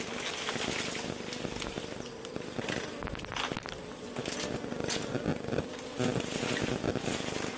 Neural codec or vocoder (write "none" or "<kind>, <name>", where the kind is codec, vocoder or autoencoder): none